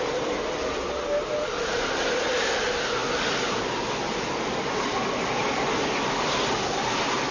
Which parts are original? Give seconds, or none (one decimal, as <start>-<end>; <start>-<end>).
0.0-7.3

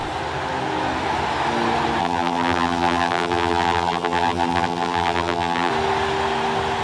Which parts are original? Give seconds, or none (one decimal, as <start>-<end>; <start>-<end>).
0.0-2.0; 5.7-6.8

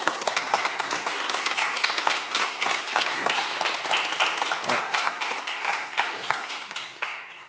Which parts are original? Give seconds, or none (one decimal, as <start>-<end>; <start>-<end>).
3.5-4.8

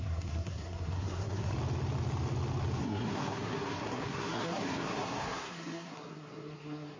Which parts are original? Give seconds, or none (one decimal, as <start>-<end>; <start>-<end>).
1.5-2.8